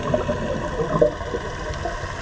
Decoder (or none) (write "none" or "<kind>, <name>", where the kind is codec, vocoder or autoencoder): none